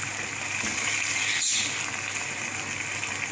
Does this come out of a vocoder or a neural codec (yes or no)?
no